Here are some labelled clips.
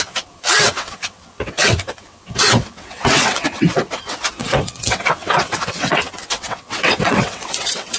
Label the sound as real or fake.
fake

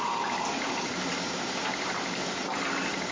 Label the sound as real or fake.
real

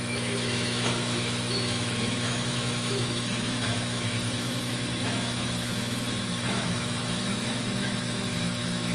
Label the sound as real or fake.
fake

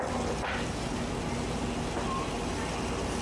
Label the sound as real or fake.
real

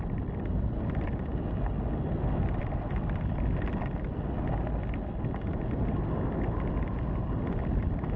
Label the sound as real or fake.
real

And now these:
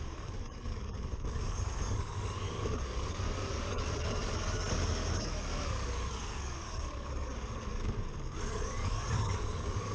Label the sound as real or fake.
fake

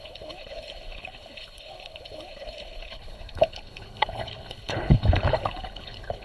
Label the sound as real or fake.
fake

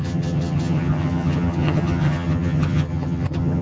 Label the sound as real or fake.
fake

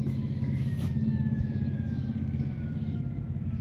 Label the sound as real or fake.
fake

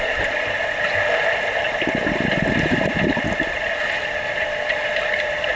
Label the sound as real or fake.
real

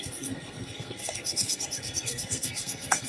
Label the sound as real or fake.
fake